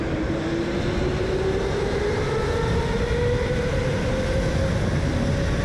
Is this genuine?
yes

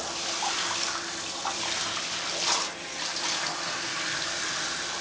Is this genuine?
yes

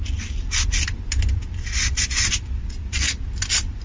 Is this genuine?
yes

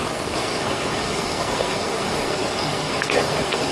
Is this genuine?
no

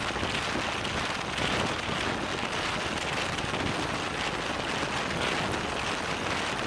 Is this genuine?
yes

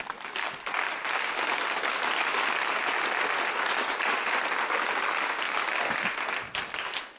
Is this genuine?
yes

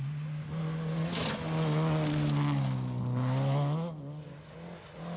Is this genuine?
yes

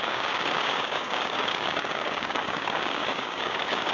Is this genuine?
no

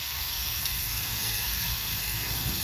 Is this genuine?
no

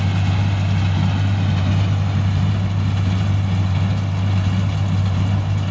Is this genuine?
yes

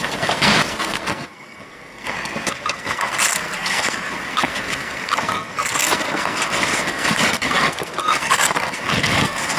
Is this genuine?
no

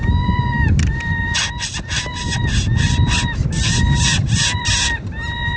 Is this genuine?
yes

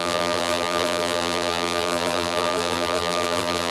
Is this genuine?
no